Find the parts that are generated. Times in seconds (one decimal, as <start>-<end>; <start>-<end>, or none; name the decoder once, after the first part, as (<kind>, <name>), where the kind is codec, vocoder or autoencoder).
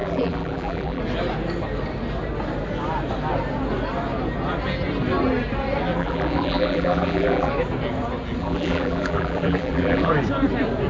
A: 0.0-1.0 (vocoder, BigVGAN v2); 6.0-7.5; 8.4-10.1